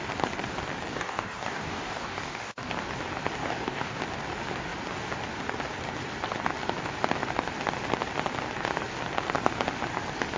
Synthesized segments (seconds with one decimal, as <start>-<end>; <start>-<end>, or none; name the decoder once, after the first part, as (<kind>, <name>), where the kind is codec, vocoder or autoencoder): 0.9-2.7 (codec, DAC); 3.4-4.0